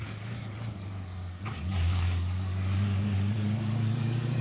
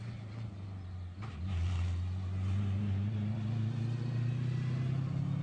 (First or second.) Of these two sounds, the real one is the second